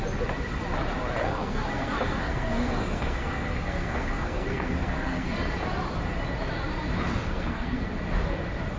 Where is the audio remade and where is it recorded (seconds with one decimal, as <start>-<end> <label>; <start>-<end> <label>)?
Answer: 0.0-1.2 recorded; 1.2-5.3 remade; 5.3-7.1 recorded; 7.1-7.9 remade; 7.9-8.8 recorded

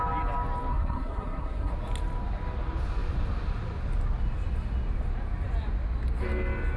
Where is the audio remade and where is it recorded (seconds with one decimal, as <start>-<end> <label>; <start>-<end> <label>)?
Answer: 0.0-0.7 recorded; 0.7-1.7 remade; 1.7-6.8 recorded

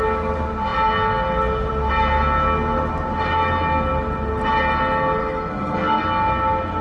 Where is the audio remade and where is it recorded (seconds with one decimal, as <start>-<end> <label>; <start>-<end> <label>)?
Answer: 0.0-5.2 recorded; 5.2-6.0 remade; 6.0-6.8 recorded

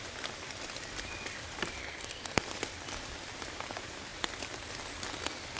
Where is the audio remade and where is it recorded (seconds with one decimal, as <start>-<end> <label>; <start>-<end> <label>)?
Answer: 0.0-1.8 recorded; 1.8-2.4 remade; 2.4-5.6 recorded

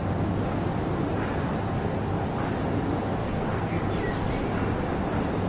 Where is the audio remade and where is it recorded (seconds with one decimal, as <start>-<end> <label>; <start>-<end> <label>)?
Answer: 0.0-3.2 recorded; 3.2-3.8 remade; 3.8-5.5 recorded

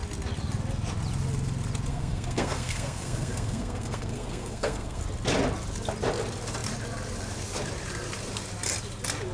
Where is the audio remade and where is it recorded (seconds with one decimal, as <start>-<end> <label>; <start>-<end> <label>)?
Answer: 0.0-1.9 recorded; 1.9-5.0 remade; 5.0-9.3 recorded

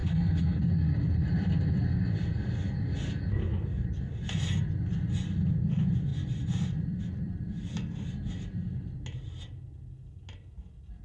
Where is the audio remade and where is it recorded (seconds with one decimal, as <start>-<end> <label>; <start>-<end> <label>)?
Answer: 0.0-0.6 remade; 0.6-11.0 recorded